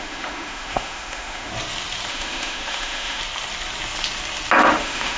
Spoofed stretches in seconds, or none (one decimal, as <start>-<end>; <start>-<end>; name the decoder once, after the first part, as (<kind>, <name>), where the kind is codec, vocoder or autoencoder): 0.0-1.5 (autoencoder, DAC-VAE); 2.1-3.2; 4.7-5.2